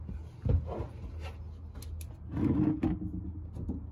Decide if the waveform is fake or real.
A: real